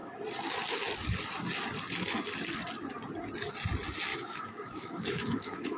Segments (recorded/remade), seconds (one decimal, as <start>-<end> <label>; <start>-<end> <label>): 0.0-4.1 recorded; 4.1-5.8 remade